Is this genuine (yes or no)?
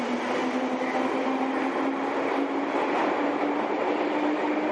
yes